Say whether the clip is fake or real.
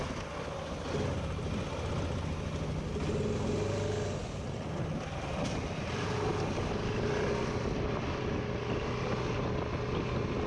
real